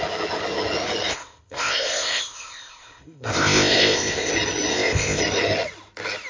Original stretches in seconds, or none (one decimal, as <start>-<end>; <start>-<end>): 0.0-1.1; 4.3-4.7; 5.2-6.3